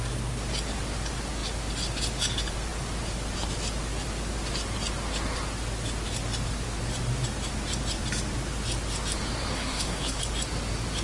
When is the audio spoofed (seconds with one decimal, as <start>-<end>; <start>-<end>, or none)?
9.5-10.2